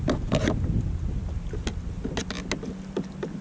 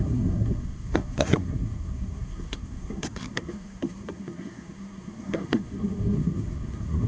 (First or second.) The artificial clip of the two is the second